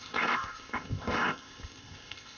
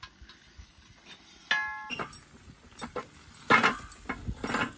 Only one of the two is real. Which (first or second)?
second